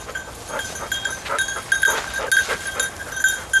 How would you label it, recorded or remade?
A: recorded